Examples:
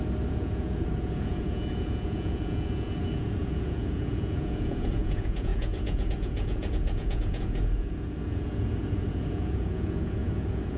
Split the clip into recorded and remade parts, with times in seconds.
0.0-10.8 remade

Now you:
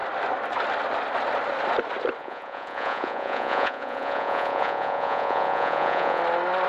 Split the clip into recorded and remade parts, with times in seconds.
0.0-2.2 recorded; 2.2-6.2 remade; 6.2-6.7 recorded